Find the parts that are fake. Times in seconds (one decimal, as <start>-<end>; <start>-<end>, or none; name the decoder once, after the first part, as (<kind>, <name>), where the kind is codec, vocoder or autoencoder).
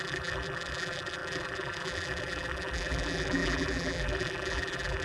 0.0-5.0 (vocoder, BigVGAN v2)